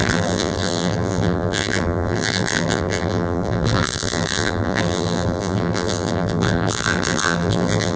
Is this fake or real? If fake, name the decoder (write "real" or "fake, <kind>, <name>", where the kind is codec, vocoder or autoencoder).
fake, vocoder, BigVGAN v2